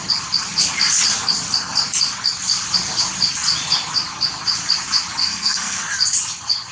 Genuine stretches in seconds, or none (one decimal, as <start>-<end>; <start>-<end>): 0.0-5.2; 5.9-6.7